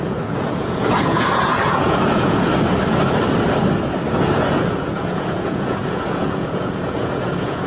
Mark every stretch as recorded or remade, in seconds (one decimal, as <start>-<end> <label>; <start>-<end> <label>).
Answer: 0.0-2.5 remade; 2.5-4.4 recorded; 4.4-7.7 remade